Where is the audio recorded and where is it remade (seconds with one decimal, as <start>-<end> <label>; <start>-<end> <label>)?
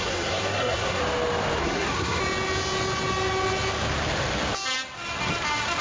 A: 0.0-1.0 remade; 1.0-1.6 recorded; 1.6-2.2 remade; 2.2-5.8 recorded